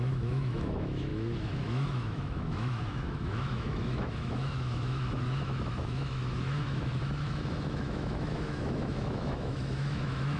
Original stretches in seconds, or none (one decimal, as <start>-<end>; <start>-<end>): none